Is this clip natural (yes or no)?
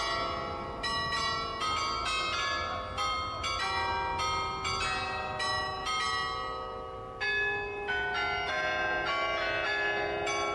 yes